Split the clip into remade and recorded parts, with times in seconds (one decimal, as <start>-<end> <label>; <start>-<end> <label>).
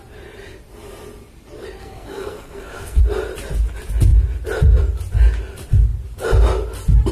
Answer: 0.0-1.8 recorded; 1.8-3.0 remade; 3.0-7.1 recorded